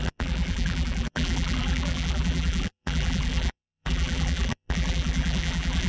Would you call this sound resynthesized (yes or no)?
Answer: yes